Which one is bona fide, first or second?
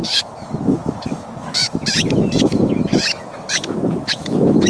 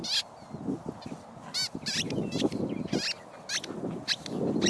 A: second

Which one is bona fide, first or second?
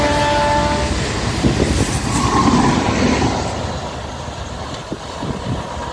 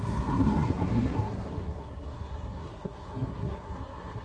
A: first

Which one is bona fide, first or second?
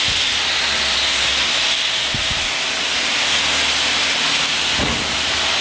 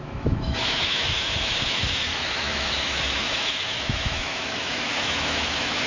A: first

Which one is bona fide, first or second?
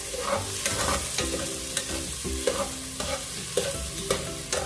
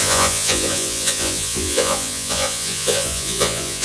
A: first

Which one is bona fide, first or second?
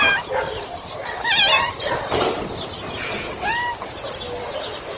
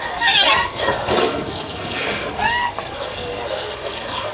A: first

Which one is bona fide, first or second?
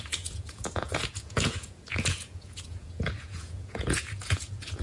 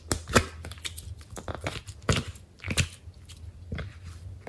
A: second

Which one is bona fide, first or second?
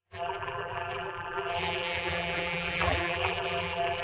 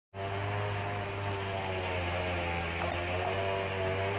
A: second